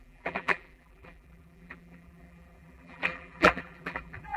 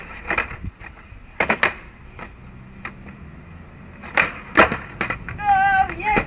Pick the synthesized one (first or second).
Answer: first